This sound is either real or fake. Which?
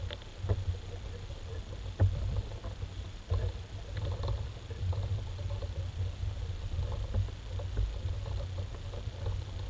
real